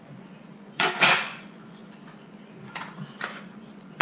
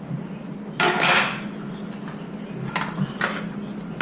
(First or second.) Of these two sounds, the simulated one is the first